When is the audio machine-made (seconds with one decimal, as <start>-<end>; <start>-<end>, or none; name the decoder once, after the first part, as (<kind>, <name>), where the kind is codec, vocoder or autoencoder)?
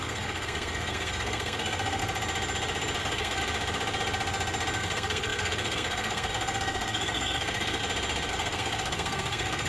0.0-2.0 (codec, SNAC); 3.0-3.4; 4.8-7.8; 8.3-9.7